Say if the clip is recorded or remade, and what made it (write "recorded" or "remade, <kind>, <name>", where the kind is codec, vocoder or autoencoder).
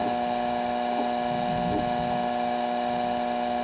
recorded